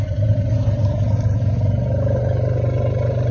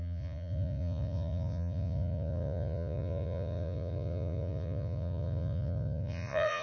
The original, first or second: first